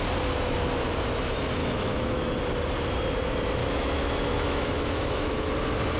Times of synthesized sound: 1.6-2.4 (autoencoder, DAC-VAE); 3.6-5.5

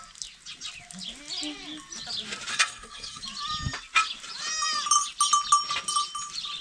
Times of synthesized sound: 2.5-3.2 (codec, SNAC)

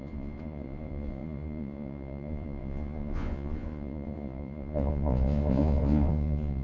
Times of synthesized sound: 0.0-6.6 (vocoder, Vocos)

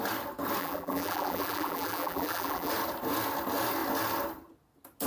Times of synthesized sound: 0.6-2.7 (vocoder, BigVGAN v2)